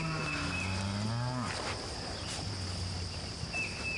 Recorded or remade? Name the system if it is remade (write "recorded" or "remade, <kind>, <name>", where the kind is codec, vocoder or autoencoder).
recorded